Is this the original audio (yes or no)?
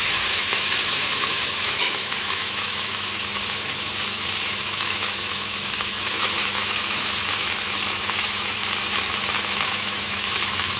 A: no